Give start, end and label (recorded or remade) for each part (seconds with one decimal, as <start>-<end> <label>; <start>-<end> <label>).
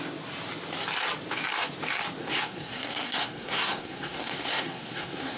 0.0-2.2 recorded; 2.2-5.4 remade